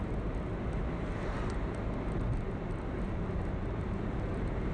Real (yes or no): yes